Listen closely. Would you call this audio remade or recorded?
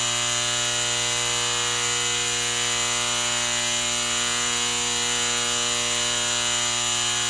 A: recorded